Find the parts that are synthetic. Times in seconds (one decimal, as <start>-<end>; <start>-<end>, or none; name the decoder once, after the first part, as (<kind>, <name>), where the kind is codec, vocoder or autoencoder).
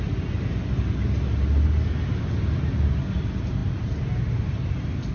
none